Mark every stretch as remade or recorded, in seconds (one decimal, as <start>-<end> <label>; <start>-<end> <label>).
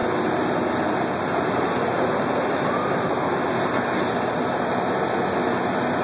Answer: 0.0-6.0 recorded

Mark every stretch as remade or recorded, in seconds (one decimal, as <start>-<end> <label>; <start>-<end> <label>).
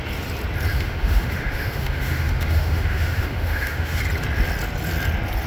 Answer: 0.0-0.7 recorded; 0.7-4.0 remade; 4.0-5.5 recorded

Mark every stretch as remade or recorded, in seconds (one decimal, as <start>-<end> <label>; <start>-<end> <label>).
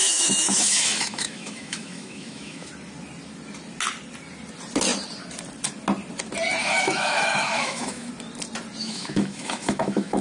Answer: 0.0-2.7 remade; 2.7-6.6 recorded; 6.6-8.1 remade; 8.1-8.8 recorded; 8.8-10.2 remade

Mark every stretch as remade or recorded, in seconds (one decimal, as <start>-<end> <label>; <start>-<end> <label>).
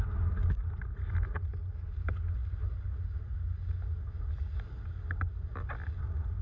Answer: 0.0-6.4 recorded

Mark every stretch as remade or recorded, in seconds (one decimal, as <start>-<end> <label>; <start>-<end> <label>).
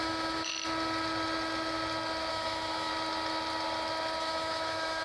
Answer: 0.0-0.5 remade; 0.5-2.3 recorded; 2.3-2.9 remade; 2.9-4.2 recorded; 4.2-5.0 remade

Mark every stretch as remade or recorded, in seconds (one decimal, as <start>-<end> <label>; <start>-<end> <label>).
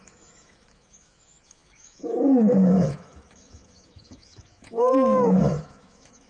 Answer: 0.0-6.3 remade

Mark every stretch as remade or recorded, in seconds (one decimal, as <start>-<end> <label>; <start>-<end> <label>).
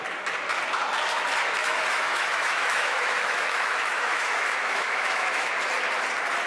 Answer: 0.0-1.6 recorded; 1.6-5.5 remade; 5.5-6.5 recorded